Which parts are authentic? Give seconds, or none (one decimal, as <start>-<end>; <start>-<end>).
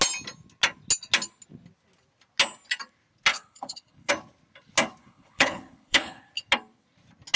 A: 0.0-3.3; 4.1-5.0; 6.3-7.4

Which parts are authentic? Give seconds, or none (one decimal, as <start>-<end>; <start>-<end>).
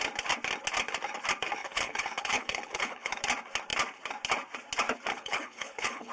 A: 0.0-1.6; 3.2-5.1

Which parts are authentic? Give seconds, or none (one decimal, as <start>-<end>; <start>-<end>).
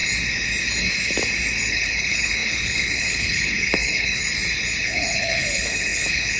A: 0.0-1.7; 4.2-4.8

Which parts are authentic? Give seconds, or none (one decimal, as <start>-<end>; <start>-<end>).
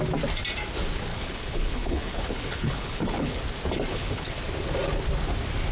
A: 0.0-1.1; 3.4-3.9; 4.4-5.7